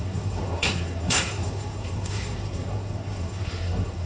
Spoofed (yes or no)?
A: yes